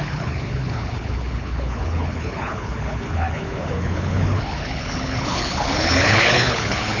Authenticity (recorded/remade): remade